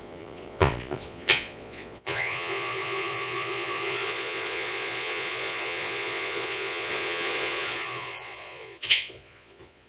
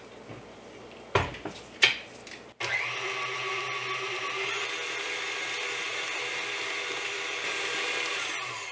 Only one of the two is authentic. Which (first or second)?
second